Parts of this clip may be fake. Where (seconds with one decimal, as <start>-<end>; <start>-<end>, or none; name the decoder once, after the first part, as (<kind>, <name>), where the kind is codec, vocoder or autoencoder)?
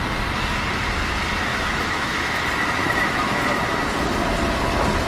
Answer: 1.5-2.4 (autoencoder, DAC-VAE); 2.8-3.4